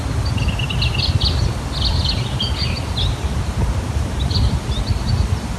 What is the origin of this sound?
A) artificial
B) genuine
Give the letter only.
B